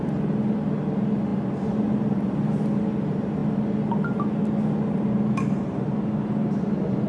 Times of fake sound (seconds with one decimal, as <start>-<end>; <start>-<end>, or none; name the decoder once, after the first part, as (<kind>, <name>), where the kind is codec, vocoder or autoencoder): none